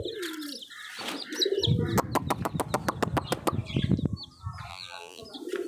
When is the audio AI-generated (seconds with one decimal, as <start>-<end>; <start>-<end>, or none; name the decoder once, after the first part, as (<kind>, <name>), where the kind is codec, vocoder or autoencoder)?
4.7-5.2 (vocoder, BigVGAN v2)